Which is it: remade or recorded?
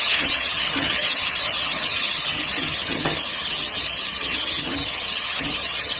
remade